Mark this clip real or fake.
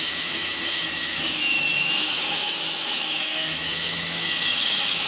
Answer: fake